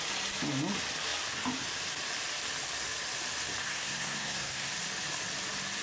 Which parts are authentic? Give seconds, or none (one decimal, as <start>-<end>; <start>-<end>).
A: 0.0-3.6; 4.7-5.8